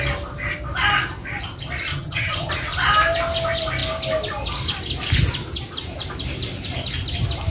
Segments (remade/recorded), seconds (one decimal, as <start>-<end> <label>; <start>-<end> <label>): 0.0-1.9 recorded; 1.9-2.5 remade; 2.5-7.5 recorded